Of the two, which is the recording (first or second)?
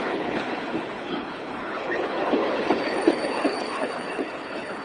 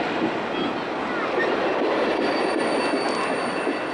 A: second